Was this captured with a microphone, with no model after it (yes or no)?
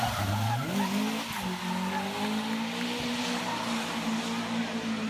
yes